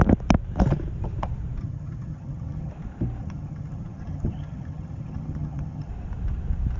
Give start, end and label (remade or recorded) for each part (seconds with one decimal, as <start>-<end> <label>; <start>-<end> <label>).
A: 0.0-1.6 recorded; 1.6-2.7 remade; 2.7-3.2 recorded; 3.2-5.9 remade; 5.9-6.8 recorded